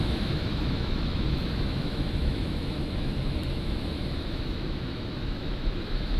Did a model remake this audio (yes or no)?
yes